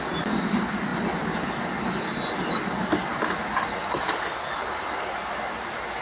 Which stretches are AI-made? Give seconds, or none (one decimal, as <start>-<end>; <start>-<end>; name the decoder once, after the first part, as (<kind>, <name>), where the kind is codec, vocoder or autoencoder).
0.9-1.6 (vocoder, BigVGAN v2)

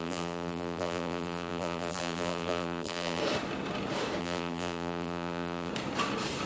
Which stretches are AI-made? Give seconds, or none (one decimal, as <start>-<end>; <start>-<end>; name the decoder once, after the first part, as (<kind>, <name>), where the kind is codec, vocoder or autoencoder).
0.0-3.2 (vocoder, BigVGAN v2); 4.2-5.7

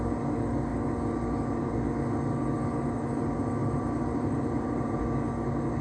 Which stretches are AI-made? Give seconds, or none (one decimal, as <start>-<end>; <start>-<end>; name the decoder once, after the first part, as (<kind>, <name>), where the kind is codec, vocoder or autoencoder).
3.6-5.0 (vocoder, BigVGAN v2)

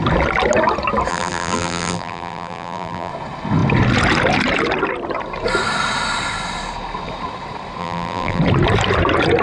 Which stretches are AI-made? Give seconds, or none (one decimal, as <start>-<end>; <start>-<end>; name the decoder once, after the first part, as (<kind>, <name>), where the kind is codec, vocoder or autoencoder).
1.1-3.1 (vocoder, BigVGAN v2); 7.8-8.4

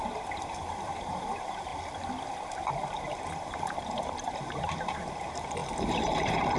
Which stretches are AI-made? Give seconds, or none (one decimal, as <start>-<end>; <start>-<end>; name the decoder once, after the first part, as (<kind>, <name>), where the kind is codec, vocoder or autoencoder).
0.0-1.7 (vocoder, BigVGAN v2); 2.9-6.6

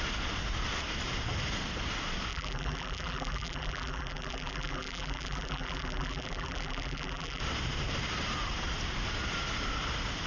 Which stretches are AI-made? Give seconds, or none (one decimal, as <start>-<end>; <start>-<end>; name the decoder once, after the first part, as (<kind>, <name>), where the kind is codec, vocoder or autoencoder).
2.3-7.4 (vocoder, BigVGAN v2)

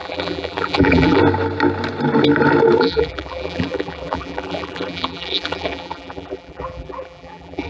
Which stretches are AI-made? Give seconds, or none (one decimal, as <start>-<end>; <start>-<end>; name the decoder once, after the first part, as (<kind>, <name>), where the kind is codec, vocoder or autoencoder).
0.0-1.2 (vocoder, BigVGAN v2); 2.8-7.7